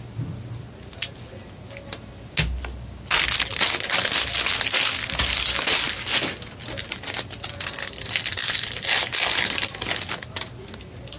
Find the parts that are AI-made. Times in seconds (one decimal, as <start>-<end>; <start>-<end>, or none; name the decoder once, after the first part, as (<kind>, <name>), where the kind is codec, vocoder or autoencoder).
none